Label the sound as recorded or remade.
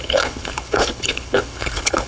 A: remade